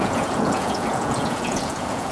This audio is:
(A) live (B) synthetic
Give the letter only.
B